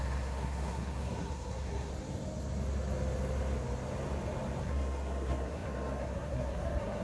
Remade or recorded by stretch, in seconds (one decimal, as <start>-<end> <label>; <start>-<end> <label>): 0.0-1.9 remade; 1.9-4.6 recorded; 4.6-7.0 remade